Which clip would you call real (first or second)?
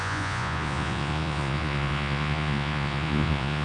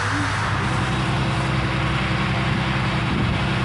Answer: second